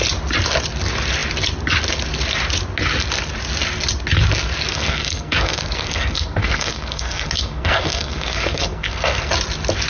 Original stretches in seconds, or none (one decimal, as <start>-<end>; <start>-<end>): 0.0-4.7; 9.3-9.9